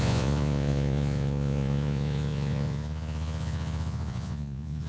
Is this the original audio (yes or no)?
no